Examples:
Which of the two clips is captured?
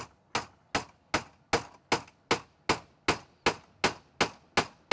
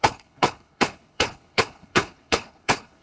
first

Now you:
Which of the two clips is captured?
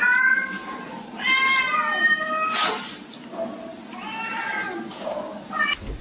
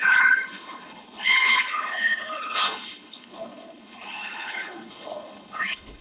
first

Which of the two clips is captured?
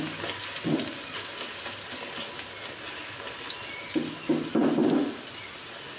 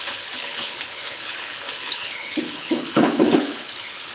first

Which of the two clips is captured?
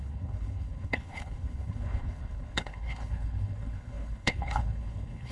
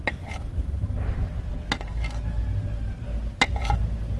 second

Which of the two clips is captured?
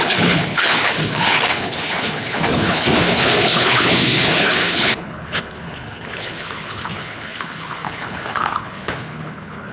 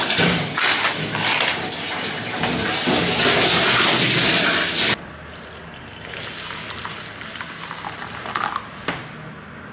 second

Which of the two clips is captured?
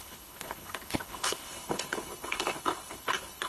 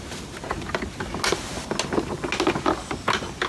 second